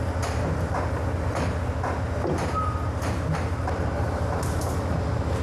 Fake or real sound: real